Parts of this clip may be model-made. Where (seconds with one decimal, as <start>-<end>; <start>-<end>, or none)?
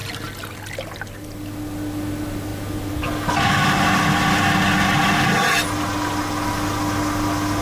none